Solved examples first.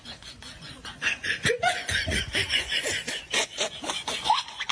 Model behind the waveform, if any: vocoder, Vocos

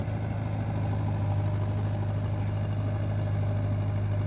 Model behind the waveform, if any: none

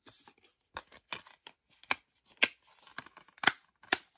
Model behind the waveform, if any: none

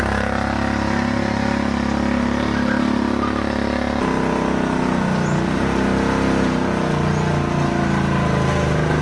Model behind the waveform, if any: none